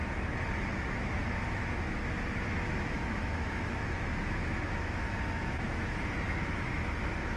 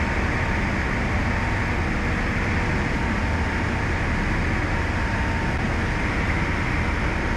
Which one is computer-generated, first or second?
first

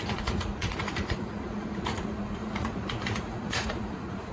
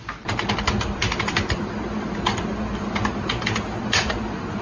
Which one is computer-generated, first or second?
first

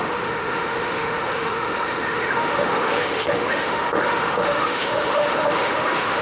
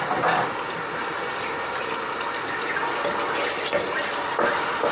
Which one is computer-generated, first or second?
first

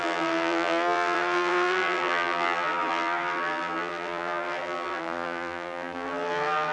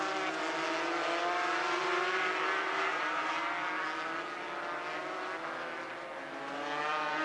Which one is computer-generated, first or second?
first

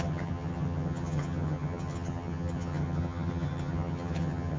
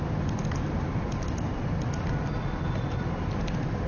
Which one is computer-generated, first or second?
first